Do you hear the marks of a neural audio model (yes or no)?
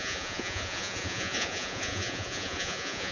yes